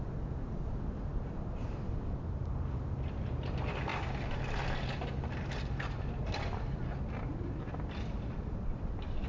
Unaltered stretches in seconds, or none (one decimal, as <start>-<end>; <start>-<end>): 0.0-7.3